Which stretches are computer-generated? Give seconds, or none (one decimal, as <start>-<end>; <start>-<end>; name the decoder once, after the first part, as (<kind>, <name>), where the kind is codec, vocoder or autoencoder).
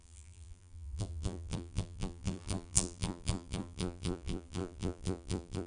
0.0-5.7 (vocoder, BigVGAN v2)